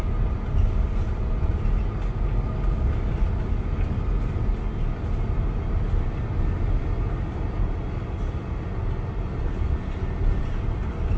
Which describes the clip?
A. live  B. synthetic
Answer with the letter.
A